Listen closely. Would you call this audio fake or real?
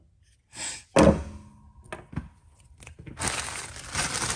real